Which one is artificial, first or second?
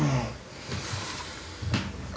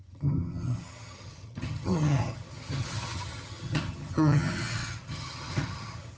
second